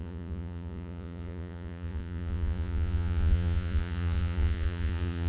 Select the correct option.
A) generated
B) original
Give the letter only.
A